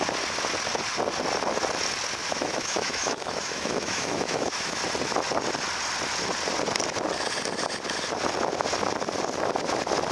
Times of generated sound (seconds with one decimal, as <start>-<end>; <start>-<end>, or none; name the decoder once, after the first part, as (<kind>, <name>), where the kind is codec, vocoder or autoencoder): 2.2-4.8 (autoencoder, DAC-VAE)